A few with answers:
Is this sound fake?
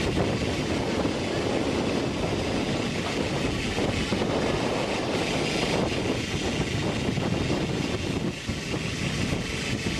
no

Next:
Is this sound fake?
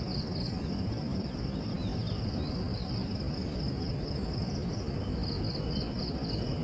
no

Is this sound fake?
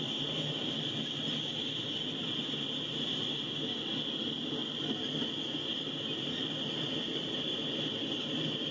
no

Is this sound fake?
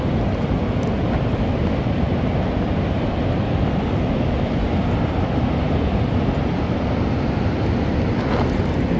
no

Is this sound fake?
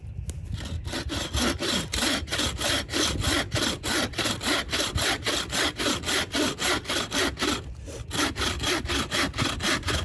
no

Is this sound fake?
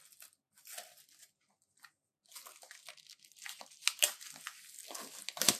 no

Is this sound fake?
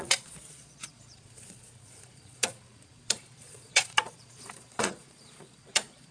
yes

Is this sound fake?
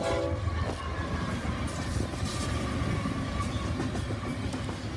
no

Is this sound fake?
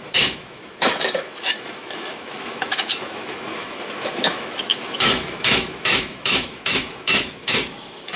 yes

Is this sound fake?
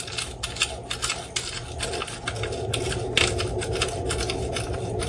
no